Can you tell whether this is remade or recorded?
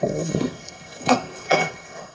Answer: remade